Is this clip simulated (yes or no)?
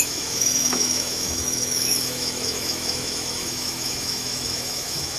yes